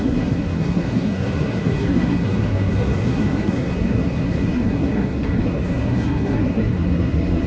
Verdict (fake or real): fake